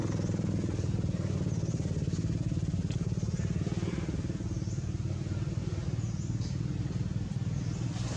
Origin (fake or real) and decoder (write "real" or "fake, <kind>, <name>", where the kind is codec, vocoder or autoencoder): real